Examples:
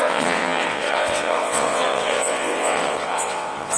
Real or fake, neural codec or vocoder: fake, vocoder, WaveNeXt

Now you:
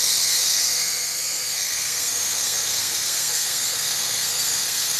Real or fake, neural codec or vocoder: fake, codec, SNAC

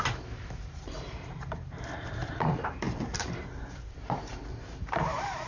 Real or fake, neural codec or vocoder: fake, vocoder, BigVGAN v2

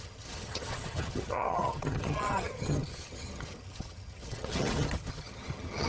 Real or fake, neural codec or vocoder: fake, vocoder, HiFi-GAN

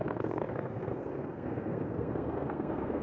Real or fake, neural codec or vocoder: fake, codec, SNAC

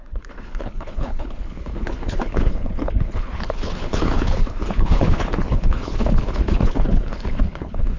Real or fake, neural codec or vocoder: fake, codec, HILCodec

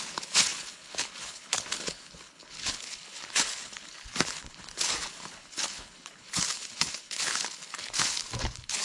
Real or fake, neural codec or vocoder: fake, codec, HILCodec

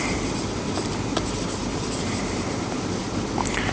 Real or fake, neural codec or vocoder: fake, vocoder, BigVGAN v2